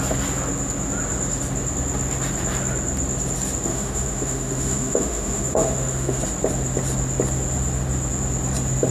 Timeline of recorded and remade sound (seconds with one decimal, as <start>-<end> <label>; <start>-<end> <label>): 0.0-3.7 recorded; 3.7-6.2 remade; 6.2-8.9 recorded